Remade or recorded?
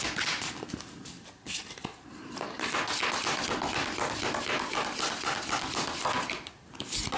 recorded